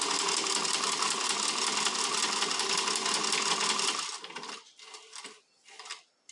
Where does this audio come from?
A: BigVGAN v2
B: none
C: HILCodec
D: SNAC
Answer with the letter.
B